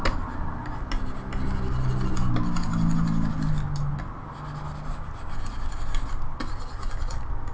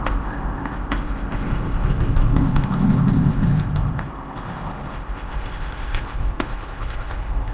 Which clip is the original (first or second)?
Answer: first